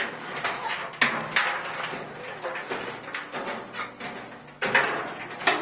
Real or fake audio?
real